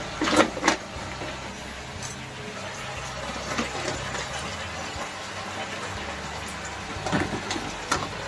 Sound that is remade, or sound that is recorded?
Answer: recorded